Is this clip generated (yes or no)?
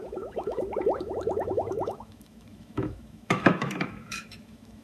yes